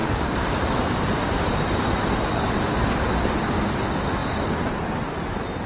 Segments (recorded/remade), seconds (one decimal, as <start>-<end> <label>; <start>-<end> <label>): 0.0-2.1 remade; 2.1-5.7 recorded